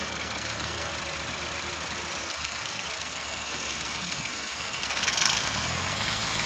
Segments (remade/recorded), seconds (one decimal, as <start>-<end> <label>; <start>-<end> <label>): 0.0-0.9 remade; 0.9-2.2 recorded; 2.2-6.5 remade